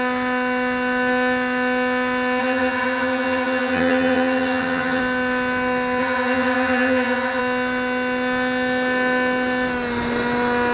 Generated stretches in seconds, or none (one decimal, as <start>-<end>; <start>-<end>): 2.4-5.0; 6.0-7.4